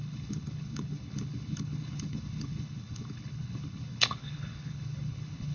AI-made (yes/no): yes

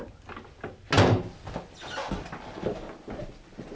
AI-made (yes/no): no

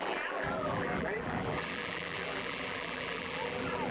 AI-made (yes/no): yes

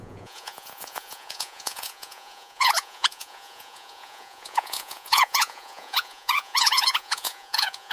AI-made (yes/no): yes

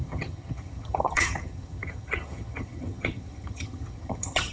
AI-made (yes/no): yes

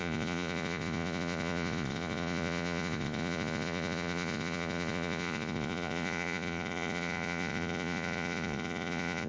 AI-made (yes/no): yes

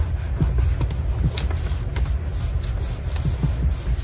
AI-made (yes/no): no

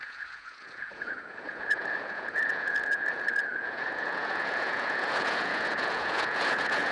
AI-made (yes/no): yes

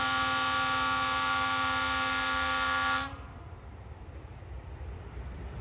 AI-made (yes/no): no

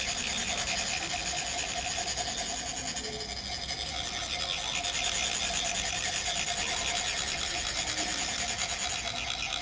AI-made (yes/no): no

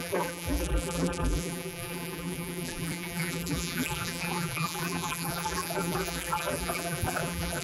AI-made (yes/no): yes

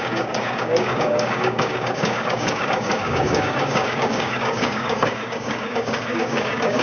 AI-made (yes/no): yes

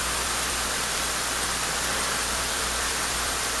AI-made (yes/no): yes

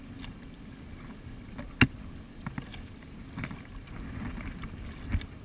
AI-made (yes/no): no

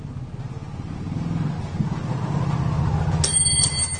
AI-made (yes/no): no